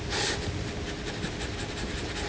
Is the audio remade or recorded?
recorded